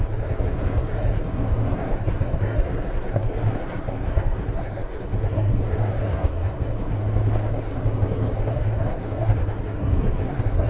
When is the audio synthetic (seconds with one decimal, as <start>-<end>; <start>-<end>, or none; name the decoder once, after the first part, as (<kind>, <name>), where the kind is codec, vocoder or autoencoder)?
0.0-7.0 (codec, SNAC); 7.5-10.7